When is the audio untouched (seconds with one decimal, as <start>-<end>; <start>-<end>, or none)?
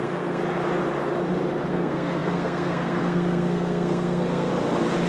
0.4-1.7; 4.5-5.1